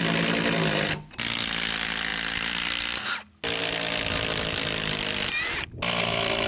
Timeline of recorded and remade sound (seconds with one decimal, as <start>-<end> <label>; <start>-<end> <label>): 0.0-6.5 recorded